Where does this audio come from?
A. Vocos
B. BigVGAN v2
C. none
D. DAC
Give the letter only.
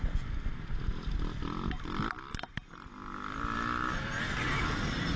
C